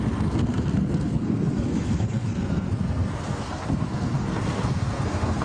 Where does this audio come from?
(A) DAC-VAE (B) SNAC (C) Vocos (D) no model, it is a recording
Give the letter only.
B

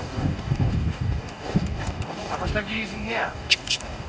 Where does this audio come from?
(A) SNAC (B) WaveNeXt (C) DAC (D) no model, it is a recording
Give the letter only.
C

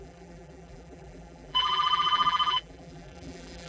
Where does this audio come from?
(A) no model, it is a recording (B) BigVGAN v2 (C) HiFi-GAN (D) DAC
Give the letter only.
B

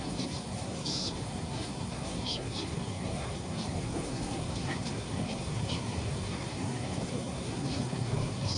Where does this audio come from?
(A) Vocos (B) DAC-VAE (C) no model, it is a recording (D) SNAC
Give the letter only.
D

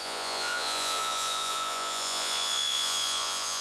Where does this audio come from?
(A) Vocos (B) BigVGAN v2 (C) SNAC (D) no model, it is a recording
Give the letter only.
A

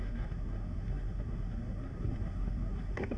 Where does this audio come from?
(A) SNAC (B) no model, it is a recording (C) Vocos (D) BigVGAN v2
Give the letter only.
A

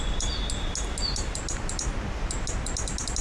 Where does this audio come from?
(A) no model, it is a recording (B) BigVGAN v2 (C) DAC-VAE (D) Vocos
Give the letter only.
A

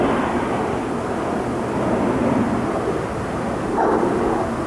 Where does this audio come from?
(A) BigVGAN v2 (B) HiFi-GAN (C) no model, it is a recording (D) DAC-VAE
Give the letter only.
C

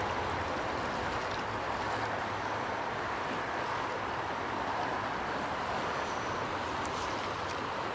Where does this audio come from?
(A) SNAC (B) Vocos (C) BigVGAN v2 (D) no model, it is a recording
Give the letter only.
D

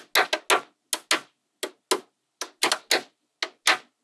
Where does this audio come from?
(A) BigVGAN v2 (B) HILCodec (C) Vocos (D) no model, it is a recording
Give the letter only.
D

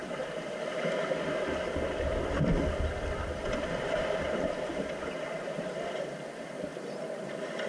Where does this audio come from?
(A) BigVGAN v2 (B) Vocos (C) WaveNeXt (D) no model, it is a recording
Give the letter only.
D